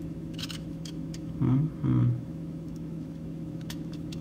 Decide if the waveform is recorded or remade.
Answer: remade